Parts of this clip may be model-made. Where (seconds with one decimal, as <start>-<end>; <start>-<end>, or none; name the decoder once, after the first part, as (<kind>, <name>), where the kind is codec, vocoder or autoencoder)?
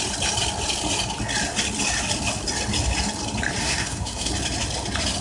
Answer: 3.6-4.3 (codec, SNAC)